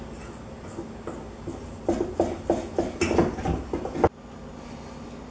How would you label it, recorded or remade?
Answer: recorded